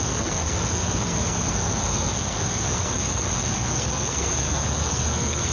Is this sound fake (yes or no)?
yes